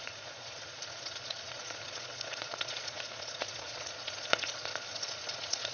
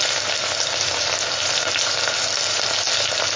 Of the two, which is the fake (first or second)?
first